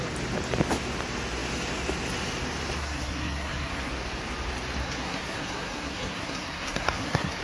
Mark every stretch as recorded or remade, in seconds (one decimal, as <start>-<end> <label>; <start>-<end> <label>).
0.0-2.8 recorded; 2.8-3.9 remade; 3.9-4.8 recorded; 4.8-7.4 remade